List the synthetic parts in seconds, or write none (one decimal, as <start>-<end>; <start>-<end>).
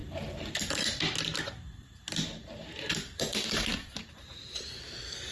0.0-1.0; 2.4-4.8